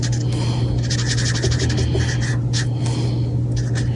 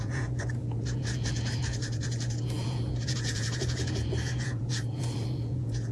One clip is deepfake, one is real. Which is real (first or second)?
first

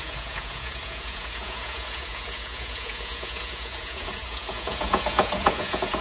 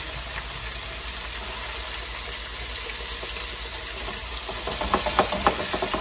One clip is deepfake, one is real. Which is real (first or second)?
second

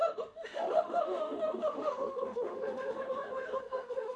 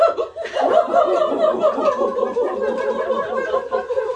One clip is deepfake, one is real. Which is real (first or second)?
second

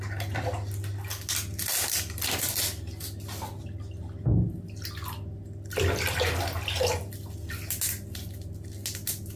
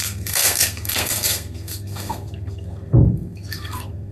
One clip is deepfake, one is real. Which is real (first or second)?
first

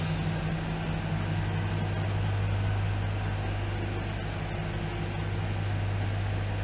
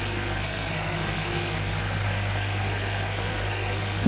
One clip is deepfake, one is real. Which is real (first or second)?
first